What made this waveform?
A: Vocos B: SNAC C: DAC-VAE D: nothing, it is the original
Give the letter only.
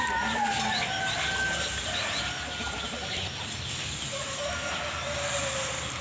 D